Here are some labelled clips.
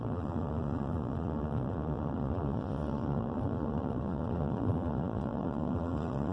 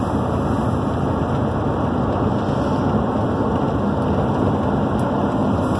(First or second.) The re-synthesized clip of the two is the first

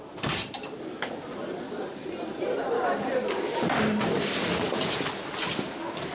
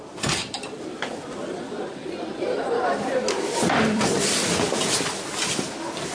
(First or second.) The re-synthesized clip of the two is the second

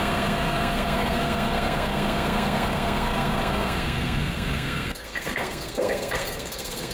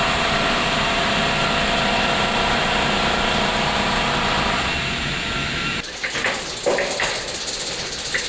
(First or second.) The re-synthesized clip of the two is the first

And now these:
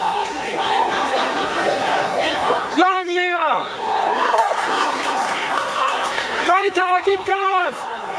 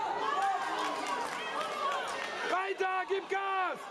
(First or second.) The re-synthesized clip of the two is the first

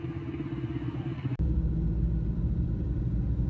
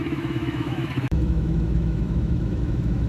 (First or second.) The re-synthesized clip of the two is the second